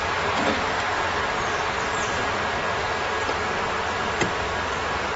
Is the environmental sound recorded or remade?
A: recorded